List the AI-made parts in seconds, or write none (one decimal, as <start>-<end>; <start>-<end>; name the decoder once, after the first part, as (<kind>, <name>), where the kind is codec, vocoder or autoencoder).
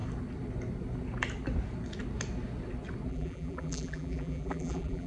3.1-5.1 (vocoder, BigVGAN v2)